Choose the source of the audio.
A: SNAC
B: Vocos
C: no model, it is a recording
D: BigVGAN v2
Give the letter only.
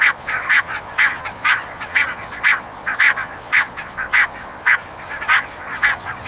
B